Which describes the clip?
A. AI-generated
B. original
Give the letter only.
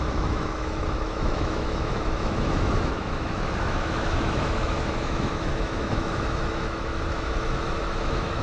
A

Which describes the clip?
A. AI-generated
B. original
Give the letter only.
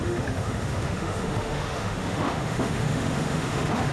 A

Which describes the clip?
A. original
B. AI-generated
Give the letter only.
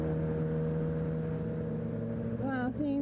A